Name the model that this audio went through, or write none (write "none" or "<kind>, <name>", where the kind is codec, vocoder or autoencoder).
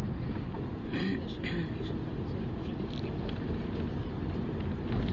none